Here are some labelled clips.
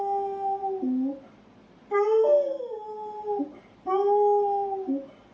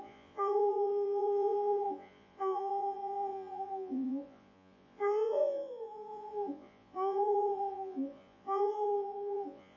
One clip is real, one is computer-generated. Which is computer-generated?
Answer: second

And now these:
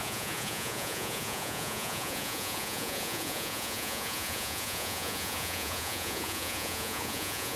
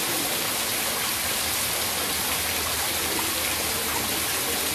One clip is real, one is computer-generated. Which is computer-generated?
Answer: first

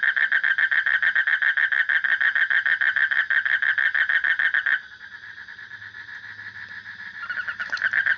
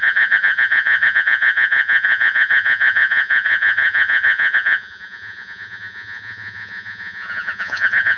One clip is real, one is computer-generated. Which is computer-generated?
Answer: second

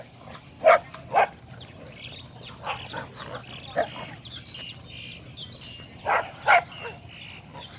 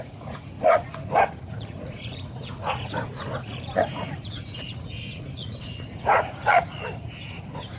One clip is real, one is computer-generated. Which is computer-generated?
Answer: second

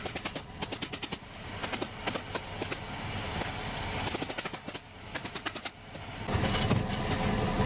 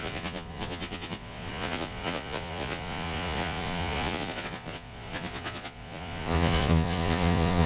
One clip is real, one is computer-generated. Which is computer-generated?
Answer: second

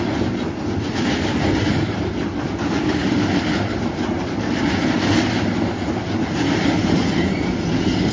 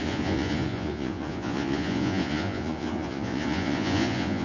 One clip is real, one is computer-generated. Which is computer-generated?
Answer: second